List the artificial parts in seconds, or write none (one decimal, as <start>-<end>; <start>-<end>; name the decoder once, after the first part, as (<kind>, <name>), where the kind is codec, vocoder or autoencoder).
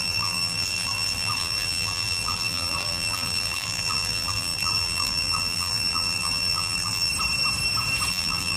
0.0-7.1 (vocoder, BigVGAN v2); 8.1-8.6